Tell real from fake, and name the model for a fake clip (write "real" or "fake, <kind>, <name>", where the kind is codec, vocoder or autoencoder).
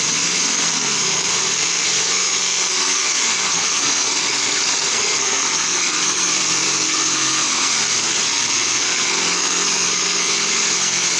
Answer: fake, codec, SNAC